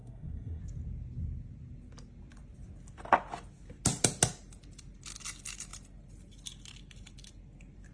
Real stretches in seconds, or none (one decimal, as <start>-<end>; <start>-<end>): 0.6-7.9